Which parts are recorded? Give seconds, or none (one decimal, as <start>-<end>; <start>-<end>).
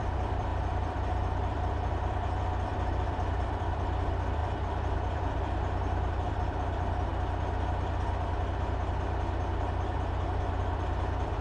7.1-10.6